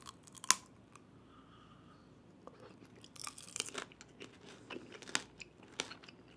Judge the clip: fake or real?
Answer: real